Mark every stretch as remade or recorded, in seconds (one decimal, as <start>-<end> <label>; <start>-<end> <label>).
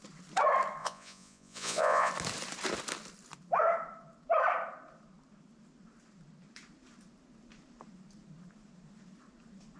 0.0-0.8 recorded; 0.8-2.1 remade; 2.1-9.8 recorded